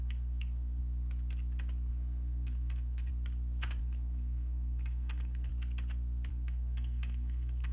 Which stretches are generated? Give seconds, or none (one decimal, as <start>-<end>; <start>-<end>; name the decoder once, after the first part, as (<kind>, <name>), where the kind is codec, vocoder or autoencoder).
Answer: 0.0-0.8 (codec, SNAC); 1.9-3.1; 3.8-5.5; 6.3-7.7